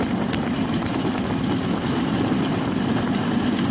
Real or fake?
real